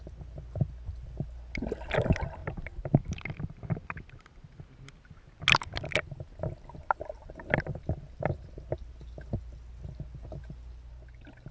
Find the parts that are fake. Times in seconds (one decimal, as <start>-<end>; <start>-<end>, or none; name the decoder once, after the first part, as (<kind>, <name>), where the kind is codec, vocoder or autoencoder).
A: 2.4-4.9 (vocoder, BigVGAN v2); 7.2-8.5